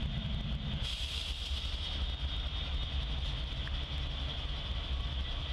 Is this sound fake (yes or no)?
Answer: no